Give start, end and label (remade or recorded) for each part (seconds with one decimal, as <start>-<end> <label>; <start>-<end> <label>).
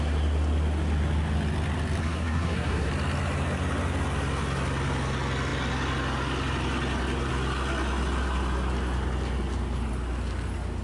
0.0-2.0 recorded; 2.0-2.9 remade; 2.9-10.8 recorded